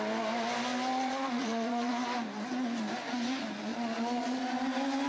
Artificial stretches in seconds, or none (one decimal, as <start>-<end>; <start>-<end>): 0.9-1.9; 3.7-4.4